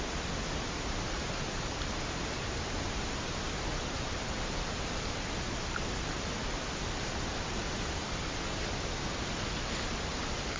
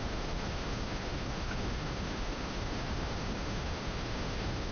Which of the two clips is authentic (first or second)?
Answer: first